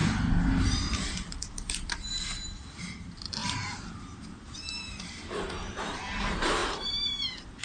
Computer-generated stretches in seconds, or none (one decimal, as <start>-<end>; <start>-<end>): 0.6-7.6